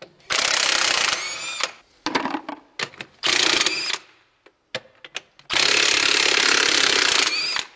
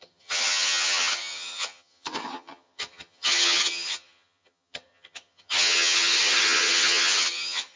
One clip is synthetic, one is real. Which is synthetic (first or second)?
second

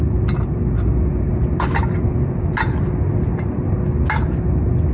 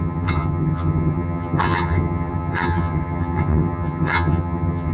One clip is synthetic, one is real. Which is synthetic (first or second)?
second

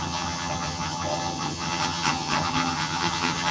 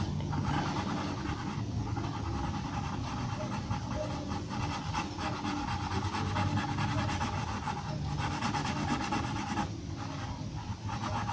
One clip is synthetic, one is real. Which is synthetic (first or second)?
first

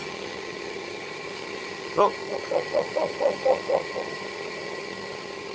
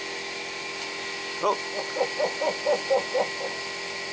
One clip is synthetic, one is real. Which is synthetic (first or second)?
first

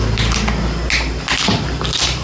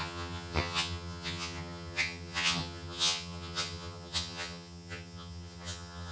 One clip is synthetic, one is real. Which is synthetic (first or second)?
second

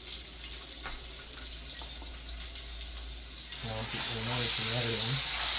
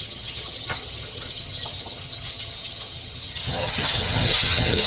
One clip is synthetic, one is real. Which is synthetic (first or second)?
second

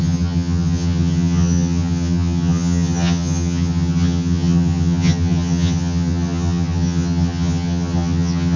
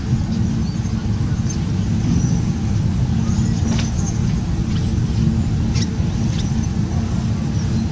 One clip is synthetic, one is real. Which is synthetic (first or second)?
first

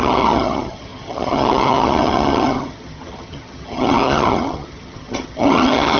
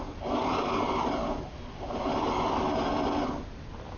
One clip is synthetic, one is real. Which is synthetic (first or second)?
first